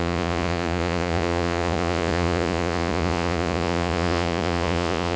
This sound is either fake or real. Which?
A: fake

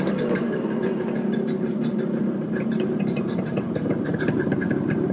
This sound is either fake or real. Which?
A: fake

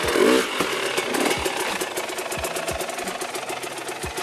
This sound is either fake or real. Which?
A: real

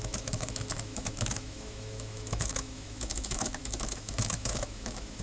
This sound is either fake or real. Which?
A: fake